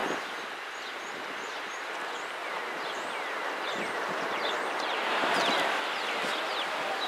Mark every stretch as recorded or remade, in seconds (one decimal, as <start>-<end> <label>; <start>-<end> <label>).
0.0-2.4 recorded; 2.4-5.3 remade; 5.3-7.1 recorded